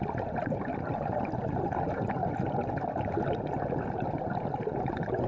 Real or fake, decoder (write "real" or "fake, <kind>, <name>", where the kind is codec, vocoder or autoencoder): real